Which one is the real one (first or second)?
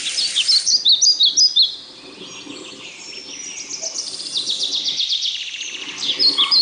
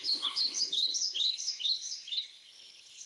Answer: first